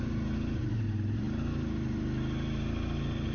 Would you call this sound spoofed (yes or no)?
no